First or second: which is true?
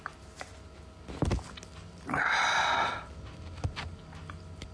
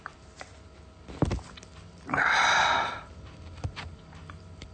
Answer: first